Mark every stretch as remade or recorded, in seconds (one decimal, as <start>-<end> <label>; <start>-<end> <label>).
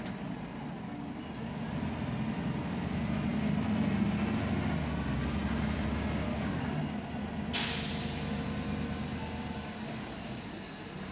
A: 0.0-11.1 recorded